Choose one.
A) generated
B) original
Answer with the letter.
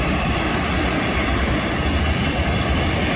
B